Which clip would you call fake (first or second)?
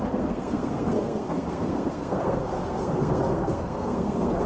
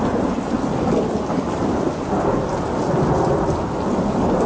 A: first